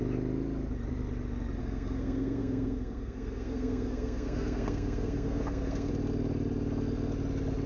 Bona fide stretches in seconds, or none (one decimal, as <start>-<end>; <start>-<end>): 0.0-1.6; 5.9-7.7